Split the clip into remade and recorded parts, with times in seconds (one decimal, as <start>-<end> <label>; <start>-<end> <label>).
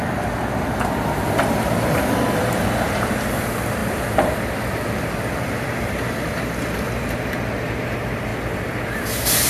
0.0-3.8 recorded; 3.8-6.3 remade; 6.3-8.3 recorded; 8.3-9.5 remade